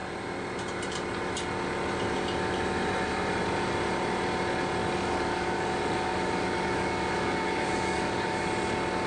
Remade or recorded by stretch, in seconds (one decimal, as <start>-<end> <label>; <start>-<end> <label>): 0.0-4.8 recorded; 4.8-8.5 remade; 8.5-9.1 recorded